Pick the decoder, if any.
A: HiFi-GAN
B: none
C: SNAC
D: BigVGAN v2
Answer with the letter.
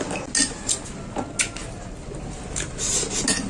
B